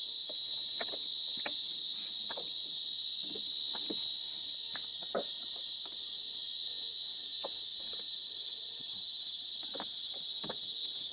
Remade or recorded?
recorded